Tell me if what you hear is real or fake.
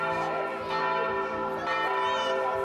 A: real